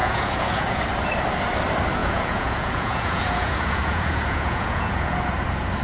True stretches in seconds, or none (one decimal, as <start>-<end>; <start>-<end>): 0.8-2.0; 5.1-5.8